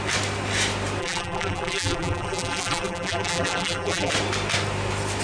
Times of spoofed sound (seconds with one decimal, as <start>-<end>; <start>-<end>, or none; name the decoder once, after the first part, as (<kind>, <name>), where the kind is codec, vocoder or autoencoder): 1.0-4.1 (vocoder, BigVGAN v2)